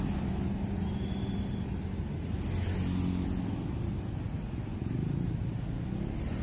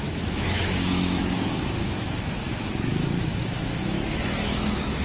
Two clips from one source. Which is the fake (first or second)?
second